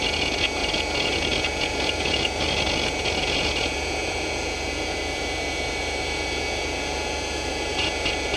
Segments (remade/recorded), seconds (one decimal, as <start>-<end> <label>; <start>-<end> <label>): 0.0-8.4 remade